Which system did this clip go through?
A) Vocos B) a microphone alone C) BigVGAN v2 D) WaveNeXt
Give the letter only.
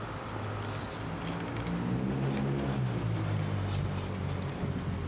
B